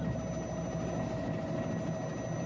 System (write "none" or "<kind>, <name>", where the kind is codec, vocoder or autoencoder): none